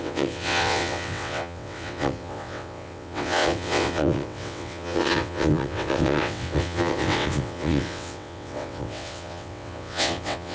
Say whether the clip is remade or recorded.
remade